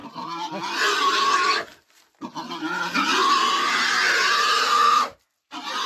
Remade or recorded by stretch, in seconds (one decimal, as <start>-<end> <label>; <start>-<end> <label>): 0.0-0.5 remade; 0.5-5.9 recorded